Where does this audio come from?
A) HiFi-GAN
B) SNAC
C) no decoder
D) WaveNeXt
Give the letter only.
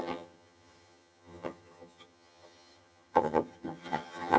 A